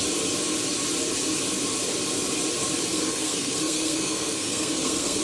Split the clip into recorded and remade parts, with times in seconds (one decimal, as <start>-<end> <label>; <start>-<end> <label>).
0.0-2.9 recorded; 2.9-5.2 remade